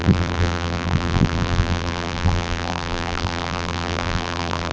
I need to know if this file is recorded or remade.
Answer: remade